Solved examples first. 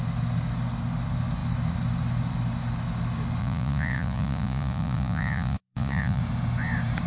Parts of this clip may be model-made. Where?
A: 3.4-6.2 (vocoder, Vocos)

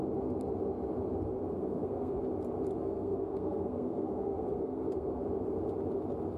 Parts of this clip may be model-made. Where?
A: 1.5-2.2 (codec, SNAC); 2.8-5.2